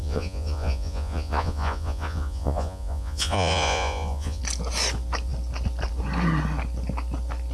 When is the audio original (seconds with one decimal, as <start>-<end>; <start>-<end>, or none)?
4.4-7.5